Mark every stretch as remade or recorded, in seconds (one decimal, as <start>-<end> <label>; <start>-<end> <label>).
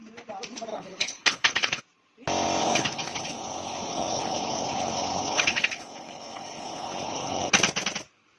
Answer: 0.0-0.7 recorded; 0.7-1.8 remade; 1.8-2.6 recorded; 2.6-7.5 remade; 7.5-8.4 recorded